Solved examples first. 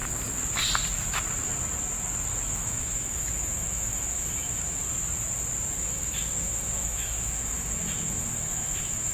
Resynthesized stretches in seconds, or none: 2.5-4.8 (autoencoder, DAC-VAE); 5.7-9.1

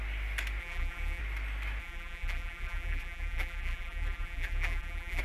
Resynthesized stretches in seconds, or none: 0.6-1.2 (vocoder, BigVGAN v2); 1.8-5.2